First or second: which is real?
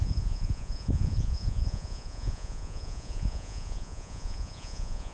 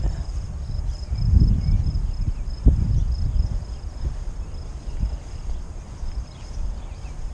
second